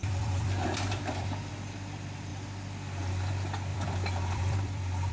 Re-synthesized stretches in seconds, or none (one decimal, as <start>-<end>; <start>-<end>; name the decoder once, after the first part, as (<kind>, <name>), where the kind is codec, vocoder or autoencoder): 0.0-1.5 (vocoder, BigVGAN v2); 3.7-5.1